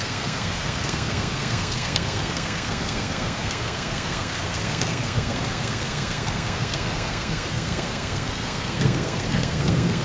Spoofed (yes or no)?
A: yes